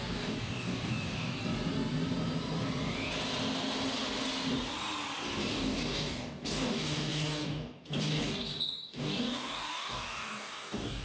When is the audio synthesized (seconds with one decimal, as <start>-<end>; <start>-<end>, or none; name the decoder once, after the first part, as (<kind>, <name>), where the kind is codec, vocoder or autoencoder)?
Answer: 0.0-1.4 (codec, DAC); 5.5-11.0